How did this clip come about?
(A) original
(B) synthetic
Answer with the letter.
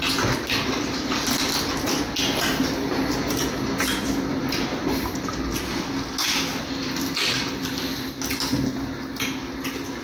A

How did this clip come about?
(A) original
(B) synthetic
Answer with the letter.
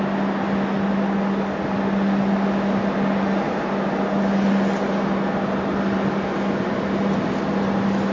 A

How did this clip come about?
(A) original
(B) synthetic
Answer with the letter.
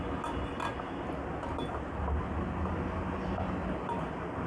A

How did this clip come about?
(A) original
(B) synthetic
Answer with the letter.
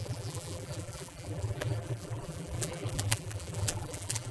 B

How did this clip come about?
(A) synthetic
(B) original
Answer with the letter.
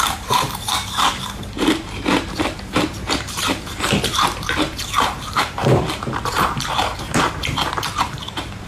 A